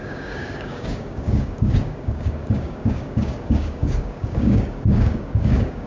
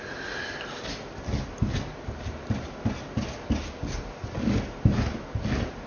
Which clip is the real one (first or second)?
second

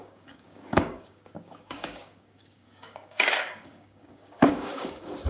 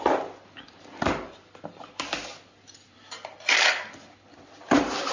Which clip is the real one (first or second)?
second